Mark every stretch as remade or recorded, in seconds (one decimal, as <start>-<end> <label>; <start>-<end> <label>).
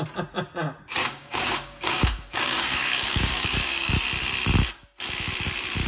0.0-1.0 recorded; 1.0-3.9 remade; 3.9-5.9 recorded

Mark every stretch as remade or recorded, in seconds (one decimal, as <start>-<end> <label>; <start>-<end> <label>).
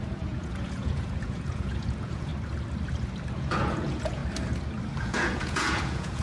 0.0-2.3 remade; 2.3-3.3 recorded; 3.3-4.2 remade; 4.2-5.0 recorded; 5.0-6.2 remade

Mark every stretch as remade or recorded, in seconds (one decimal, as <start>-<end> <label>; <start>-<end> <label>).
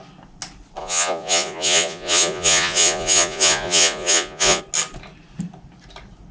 0.0-0.8 recorded; 0.8-4.6 remade; 4.6-6.3 recorded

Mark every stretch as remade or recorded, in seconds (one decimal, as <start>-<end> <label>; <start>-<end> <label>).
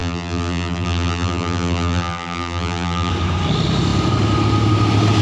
0.0-3.1 remade; 3.1-5.2 recorded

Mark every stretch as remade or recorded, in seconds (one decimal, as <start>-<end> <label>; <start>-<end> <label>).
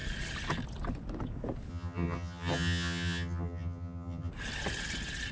0.0-1.7 recorded; 1.7-4.3 remade; 4.3-5.3 recorded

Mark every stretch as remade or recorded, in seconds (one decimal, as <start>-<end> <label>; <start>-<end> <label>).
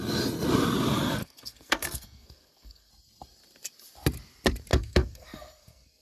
0.0-1.2 recorded; 1.2-2.9 remade; 2.9-4.7 recorded; 4.7-6.0 remade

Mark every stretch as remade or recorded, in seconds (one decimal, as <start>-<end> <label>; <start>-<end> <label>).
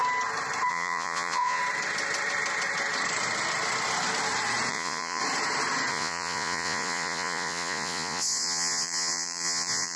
0.0-0.7 recorded; 0.7-1.6 remade; 1.6-4.7 recorded; 4.7-5.2 remade; 5.2-5.9 recorded; 5.9-10.0 remade